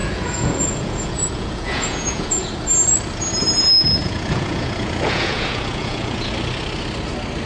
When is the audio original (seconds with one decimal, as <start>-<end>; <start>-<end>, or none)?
2.5-4.0; 6.3-7.5